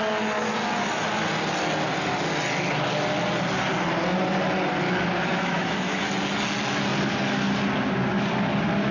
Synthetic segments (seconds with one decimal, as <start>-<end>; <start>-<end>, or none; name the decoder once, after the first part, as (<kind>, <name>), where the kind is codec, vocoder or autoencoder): 5.3-6.0 (autoencoder, DAC-VAE)